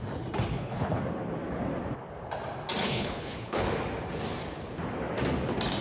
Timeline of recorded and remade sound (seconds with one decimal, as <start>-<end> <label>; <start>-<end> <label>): 0.0-0.5 recorded; 0.5-1.0 remade; 1.0-2.8 recorded; 2.8-3.6 remade; 3.6-5.8 recorded